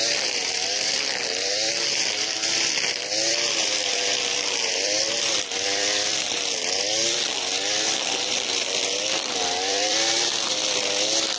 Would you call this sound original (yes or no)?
no